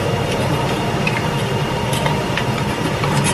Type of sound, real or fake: fake